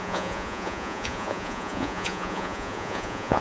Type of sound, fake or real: fake